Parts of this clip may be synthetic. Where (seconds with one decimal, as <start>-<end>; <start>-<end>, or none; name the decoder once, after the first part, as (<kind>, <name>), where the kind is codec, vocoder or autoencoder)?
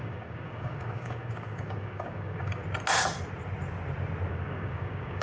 0.0-2.6 (codec, DAC); 4.3-5.2